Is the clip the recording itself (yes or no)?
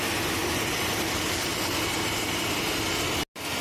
yes